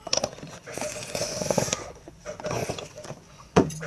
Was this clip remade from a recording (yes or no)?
yes